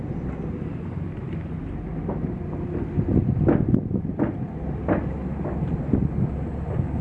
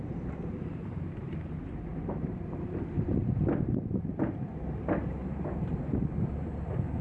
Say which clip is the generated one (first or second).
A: second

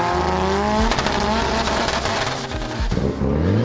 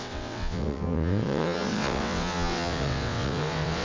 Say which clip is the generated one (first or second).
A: second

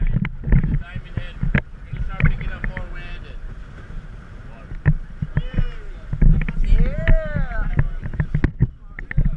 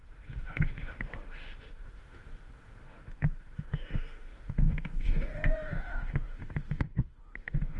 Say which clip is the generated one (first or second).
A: second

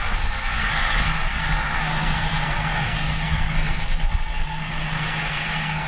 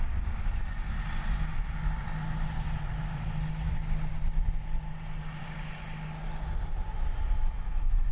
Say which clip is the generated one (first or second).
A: first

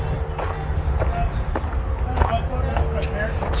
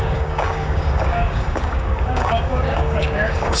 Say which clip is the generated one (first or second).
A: second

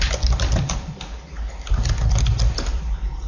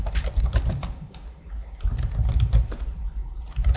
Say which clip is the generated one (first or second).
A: second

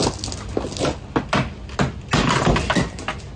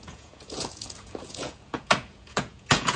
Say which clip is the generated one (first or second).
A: second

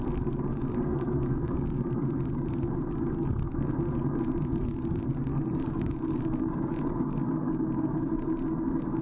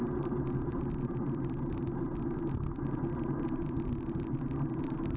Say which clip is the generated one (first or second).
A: first